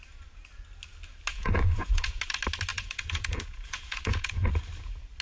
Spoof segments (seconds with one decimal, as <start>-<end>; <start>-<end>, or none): 1.3-2.2; 2.7-4.6